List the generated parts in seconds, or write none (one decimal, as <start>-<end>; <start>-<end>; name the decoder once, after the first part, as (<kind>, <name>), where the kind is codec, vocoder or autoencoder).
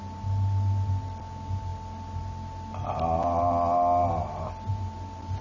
none